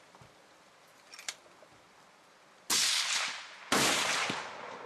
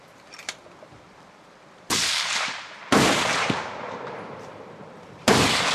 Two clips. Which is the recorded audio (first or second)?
first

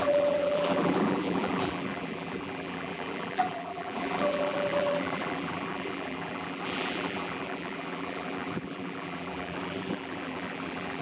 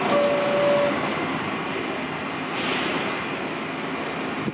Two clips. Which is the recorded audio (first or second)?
second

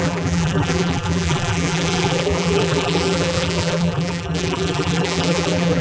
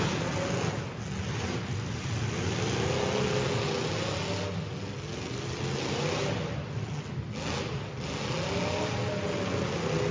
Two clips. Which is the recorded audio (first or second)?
second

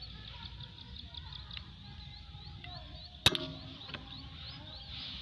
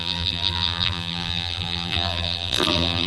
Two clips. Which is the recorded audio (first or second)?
first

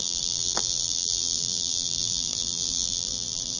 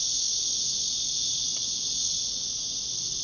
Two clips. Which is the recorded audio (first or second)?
second